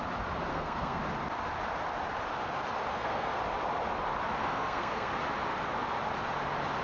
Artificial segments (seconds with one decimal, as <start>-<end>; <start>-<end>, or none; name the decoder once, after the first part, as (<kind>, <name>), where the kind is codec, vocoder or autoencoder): 0.5-1.0 (codec, SNAC); 2.9-3.4; 4.4-5.1